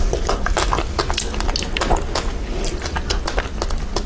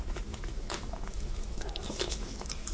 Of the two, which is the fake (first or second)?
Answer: second